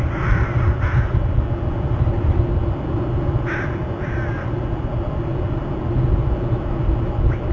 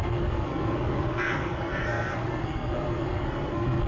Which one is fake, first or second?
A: second